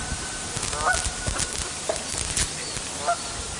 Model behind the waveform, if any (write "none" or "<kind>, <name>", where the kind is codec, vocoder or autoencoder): none